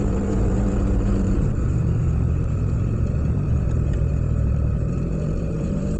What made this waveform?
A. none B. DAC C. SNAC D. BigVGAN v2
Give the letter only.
D